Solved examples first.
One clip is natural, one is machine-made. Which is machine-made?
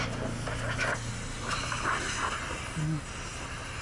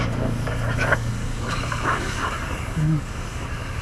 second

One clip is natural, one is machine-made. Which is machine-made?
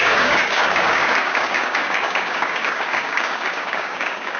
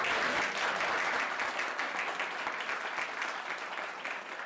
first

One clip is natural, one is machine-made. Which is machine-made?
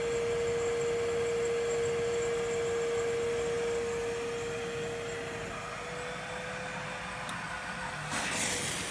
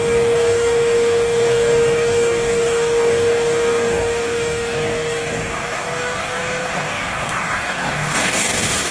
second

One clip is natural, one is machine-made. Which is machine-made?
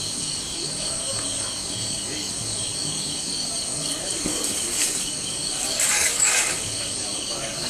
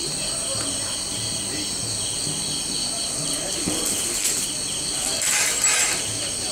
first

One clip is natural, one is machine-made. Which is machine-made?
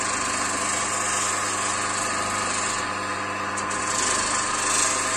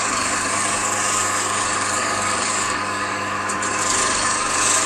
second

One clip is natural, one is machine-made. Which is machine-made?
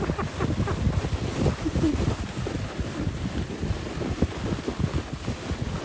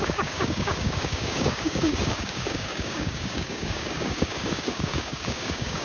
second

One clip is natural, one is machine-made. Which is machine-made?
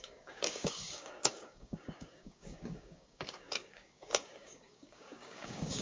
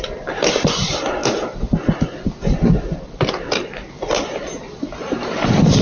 first